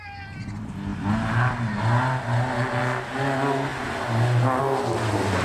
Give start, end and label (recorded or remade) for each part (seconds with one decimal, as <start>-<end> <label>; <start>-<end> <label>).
0.0-5.4 recorded